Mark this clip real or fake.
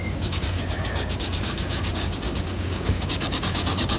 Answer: fake